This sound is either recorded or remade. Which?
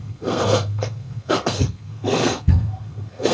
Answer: remade